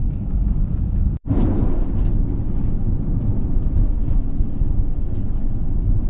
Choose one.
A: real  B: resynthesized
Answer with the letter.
B